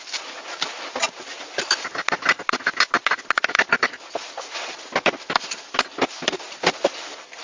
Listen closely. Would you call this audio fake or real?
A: real